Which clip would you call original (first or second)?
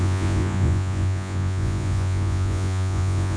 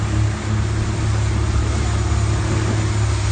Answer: second